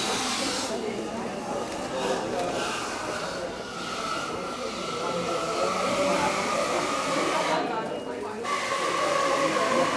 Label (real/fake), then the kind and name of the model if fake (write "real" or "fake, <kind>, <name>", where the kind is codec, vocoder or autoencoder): real